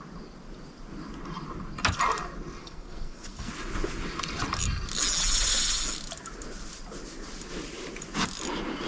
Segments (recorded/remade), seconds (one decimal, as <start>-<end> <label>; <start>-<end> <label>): 0.0-2.6 recorded; 2.6-3.5 remade; 3.5-8.9 recorded